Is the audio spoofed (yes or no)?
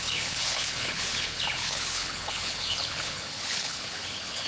yes